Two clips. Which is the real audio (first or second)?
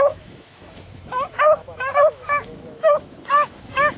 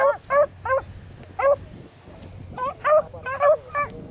second